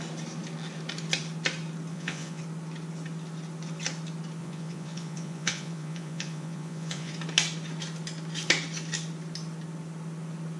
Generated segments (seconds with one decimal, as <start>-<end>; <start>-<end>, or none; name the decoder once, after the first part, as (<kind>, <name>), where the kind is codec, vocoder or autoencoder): 1.9-2.4 (vocoder, Vocos); 4.4-7.1